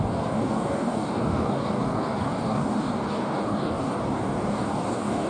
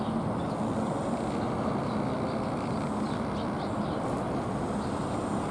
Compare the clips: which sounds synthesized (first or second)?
first